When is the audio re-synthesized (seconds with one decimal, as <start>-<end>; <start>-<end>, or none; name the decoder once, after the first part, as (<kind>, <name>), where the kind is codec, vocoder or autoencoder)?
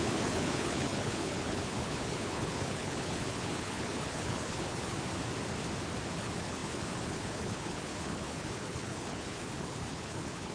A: 0.0-4.9 (codec, HILCodec); 6.1-10.5